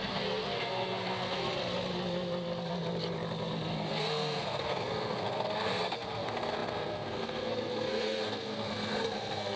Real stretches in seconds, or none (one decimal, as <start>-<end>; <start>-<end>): 1.4-3.9